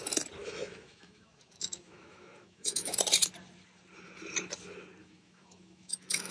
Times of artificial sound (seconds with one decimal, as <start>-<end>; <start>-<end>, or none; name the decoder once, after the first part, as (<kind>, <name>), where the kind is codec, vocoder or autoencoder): 0.4-3.0 (autoencoder, DAC-VAE); 5.0-6.3